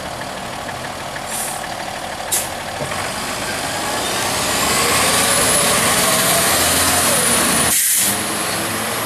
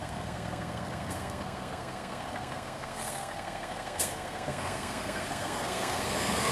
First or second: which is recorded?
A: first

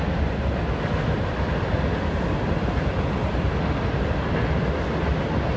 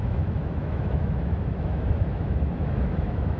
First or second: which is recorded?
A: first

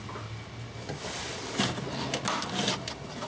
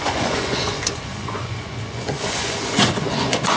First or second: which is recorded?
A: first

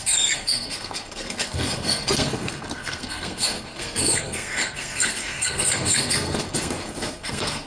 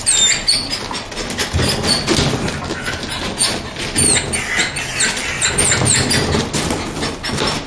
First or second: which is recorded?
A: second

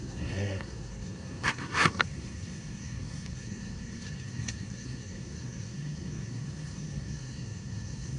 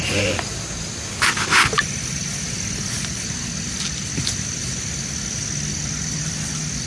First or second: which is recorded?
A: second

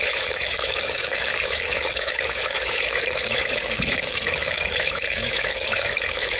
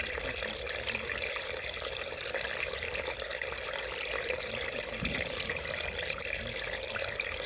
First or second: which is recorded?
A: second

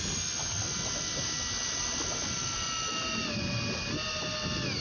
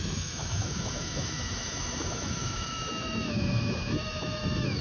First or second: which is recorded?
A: first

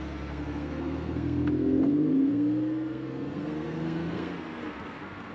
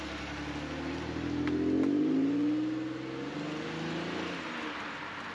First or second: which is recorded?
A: second